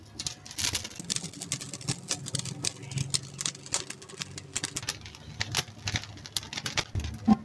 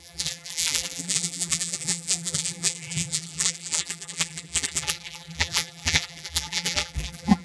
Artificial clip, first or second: second